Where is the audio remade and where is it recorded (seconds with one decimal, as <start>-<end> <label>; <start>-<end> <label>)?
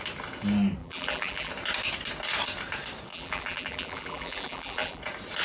0.0-0.8 recorded; 0.8-1.5 remade; 1.5-3.1 recorded; 3.1-5.0 remade; 5.0-5.4 recorded